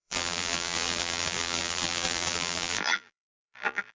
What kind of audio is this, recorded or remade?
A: remade